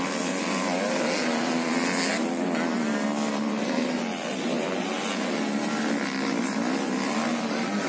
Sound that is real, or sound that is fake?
real